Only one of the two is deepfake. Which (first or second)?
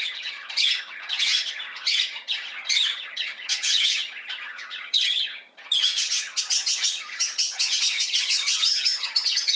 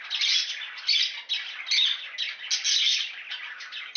first